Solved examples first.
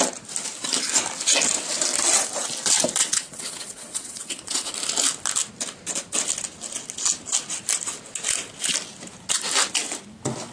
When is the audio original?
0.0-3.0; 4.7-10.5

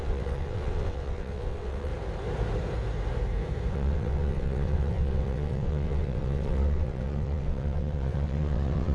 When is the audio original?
1.9-3.7

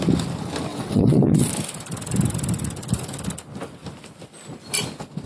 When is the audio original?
0.0-0.7; 1.5-5.3

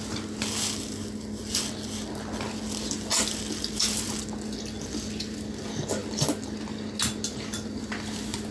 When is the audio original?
0.0-8.5

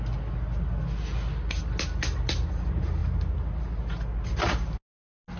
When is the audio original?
0.0-5.4

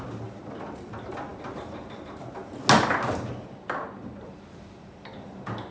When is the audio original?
0.0-5.7